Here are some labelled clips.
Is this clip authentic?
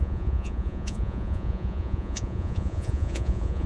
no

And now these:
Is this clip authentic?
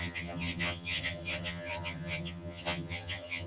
no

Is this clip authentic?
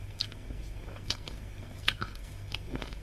no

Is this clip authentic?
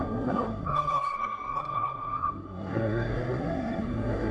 no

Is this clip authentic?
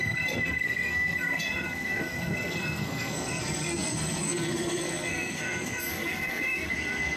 no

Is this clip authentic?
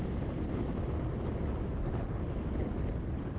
yes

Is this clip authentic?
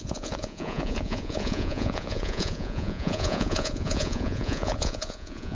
no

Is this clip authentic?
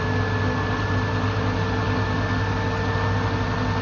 yes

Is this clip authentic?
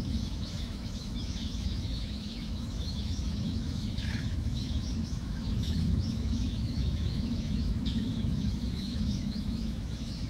no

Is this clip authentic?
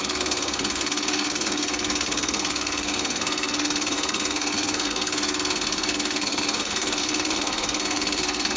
no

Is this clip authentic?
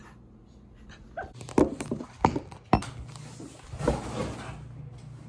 yes